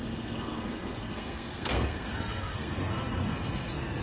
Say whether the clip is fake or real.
fake